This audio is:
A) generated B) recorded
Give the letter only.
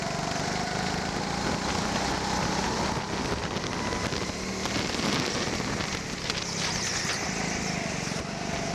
B